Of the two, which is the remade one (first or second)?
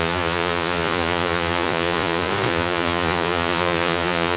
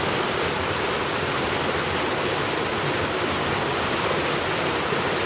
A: first